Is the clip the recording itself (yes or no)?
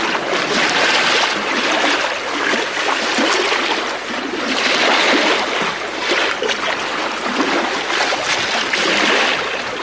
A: yes